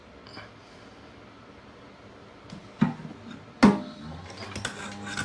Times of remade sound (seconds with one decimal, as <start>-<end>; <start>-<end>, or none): none